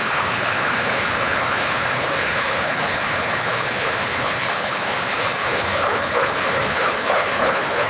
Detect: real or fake fake